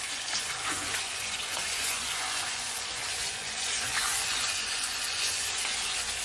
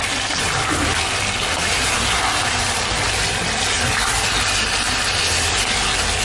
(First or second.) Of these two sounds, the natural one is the second